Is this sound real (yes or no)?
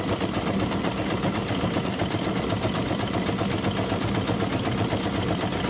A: yes